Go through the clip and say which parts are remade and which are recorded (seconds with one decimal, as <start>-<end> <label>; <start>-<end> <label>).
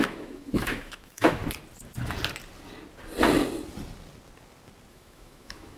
0.0-1.4 remade; 1.4-4.9 recorded; 4.9-5.8 remade